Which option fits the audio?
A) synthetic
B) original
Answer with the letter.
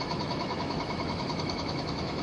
A